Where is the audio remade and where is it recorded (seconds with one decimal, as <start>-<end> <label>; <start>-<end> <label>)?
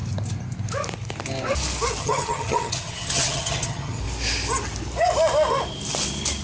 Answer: 0.0-2.0 recorded; 2.0-4.0 remade; 4.0-6.4 recorded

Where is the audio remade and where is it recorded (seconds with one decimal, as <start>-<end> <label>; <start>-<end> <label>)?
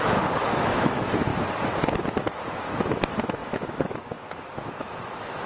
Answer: 0.0-1.3 remade; 1.3-2.2 recorded; 2.2-5.5 remade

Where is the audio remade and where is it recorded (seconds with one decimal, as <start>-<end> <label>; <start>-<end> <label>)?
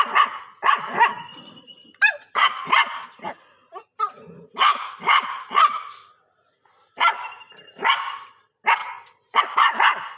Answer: 0.0-10.2 recorded